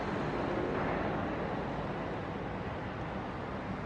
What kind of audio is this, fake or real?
real